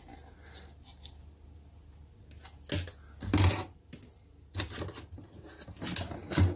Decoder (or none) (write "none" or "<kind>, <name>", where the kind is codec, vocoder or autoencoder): none